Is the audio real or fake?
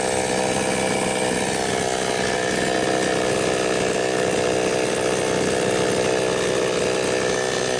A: real